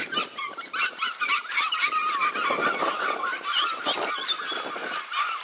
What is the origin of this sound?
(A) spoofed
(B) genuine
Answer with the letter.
A